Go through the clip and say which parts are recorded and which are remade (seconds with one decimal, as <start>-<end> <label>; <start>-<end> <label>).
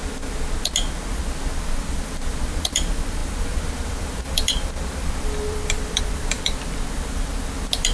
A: 0.0-1.1 recorded; 1.1-7.9 remade